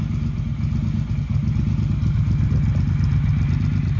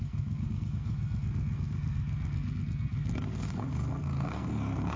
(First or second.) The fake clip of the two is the second